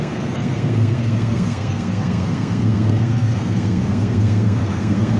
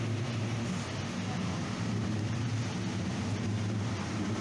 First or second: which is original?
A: second